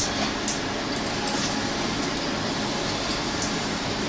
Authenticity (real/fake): real